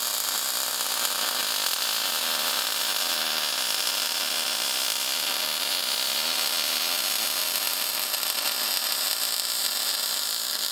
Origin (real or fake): real